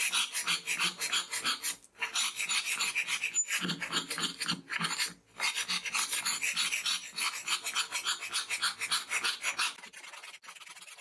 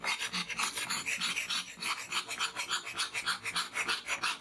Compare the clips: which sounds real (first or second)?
first